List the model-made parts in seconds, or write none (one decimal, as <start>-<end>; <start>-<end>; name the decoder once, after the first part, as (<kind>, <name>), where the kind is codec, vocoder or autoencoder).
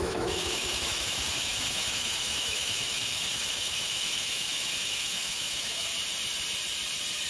0.0-5.9 (autoencoder, DAC-VAE)